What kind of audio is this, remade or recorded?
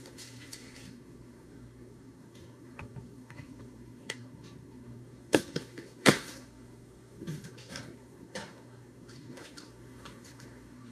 remade